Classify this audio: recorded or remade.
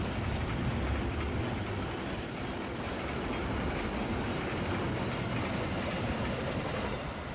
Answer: recorded